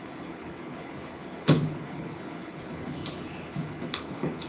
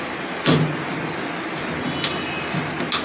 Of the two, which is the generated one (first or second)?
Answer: first